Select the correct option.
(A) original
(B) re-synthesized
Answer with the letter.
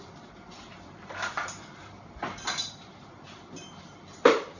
B